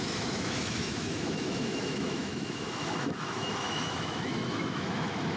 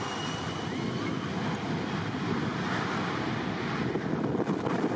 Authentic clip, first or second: second